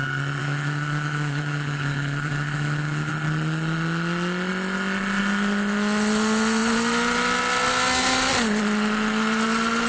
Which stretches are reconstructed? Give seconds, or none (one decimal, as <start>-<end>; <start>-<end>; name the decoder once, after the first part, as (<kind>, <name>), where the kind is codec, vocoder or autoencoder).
0.4-3.1 (autoencoder, DAC-VAE)